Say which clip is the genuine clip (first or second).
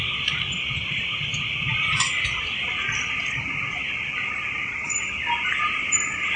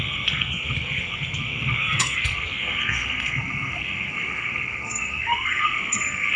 first